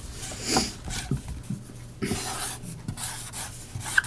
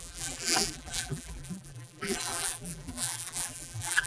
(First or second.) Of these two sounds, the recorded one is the first